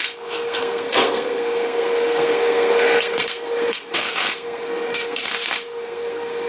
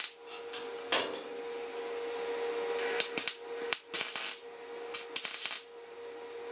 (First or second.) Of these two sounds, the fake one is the first